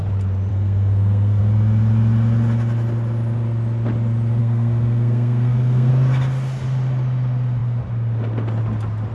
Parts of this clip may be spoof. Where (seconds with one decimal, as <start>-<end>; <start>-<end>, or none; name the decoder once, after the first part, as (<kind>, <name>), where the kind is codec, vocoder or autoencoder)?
0.5-1.4 (codec, SNAC); 4.4-5.9

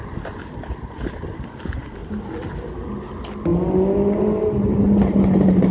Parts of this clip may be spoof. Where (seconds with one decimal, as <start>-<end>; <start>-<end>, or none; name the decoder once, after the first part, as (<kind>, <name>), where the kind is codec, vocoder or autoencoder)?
none

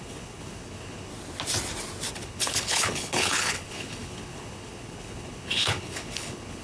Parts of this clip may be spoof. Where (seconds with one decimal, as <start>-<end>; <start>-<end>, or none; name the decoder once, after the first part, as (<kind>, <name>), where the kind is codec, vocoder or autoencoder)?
0.0-1.1 (codec, HILCodec); 2.1-6.6

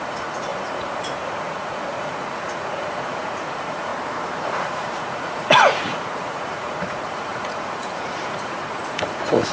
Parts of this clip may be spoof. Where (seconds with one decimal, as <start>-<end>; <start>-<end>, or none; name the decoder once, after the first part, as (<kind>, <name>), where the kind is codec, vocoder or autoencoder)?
0.0-3.9 (vocoder, Vocos); 4.4-9.5

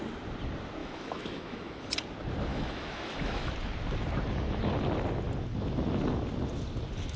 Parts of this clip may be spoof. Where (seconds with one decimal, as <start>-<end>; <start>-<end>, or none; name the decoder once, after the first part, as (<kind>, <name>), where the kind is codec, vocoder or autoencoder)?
0.8-1.9 (autoencoder, DAC-VAE); 2.5-3.5